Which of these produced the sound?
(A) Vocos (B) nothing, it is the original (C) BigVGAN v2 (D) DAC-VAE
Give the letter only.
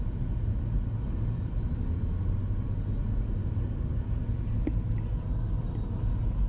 B